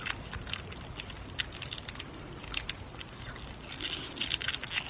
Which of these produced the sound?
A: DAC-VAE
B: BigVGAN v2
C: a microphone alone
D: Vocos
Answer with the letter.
C